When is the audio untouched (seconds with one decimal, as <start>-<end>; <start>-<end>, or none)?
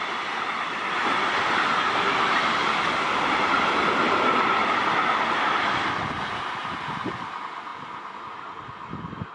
0.0-9.3